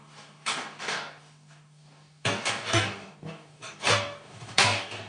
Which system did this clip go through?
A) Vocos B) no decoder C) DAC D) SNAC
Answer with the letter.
C